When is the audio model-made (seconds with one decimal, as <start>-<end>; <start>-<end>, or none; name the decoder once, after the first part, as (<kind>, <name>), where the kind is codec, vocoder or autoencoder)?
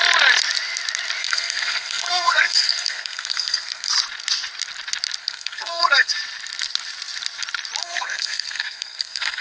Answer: 1.2-3.9 (codec, SNAC); 5.2-6.1; 7.8-9.4